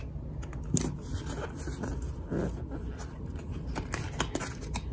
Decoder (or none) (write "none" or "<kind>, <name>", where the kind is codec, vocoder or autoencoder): none